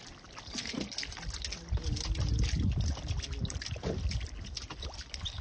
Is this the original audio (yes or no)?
yes